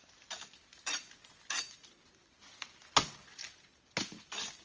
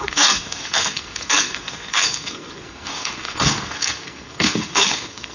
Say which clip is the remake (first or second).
second